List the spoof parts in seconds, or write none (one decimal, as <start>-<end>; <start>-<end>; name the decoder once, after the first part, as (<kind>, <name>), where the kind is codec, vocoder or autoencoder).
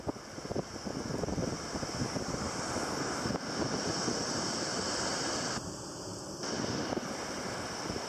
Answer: none